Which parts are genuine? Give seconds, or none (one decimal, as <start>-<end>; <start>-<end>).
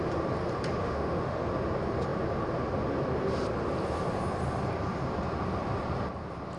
0.0-0.8; 1.5-6.6